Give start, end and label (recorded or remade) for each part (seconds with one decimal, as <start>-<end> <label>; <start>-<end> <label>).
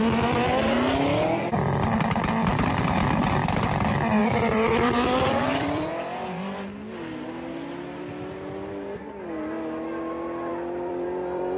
0.0-4.2 recorded; 4.2-5.9 remade; 5.9-10.5 recorded; 10.5-11.6 remade